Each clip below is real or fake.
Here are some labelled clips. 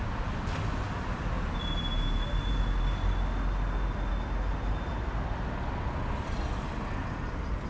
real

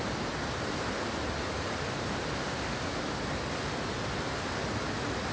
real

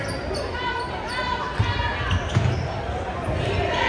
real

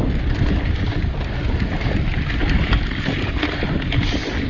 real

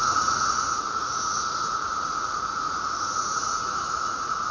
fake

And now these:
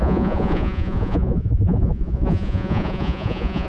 fake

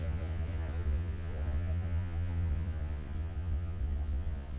fake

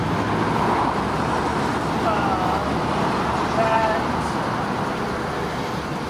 real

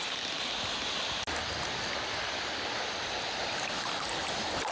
real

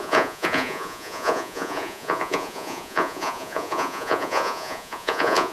fake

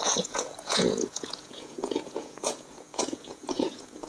fake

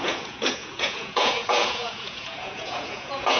fake